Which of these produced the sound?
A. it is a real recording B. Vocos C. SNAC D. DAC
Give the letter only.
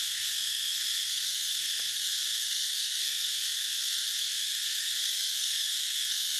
C